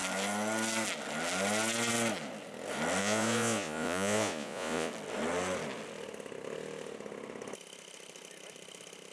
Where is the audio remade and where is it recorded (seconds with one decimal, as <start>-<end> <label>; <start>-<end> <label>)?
0.0-3.0 recorded; 3.0-4.9 remade; 4.9-9.1 recorded